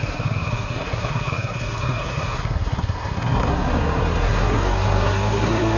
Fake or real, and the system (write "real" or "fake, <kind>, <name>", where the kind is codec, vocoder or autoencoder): fake, codec, SNAC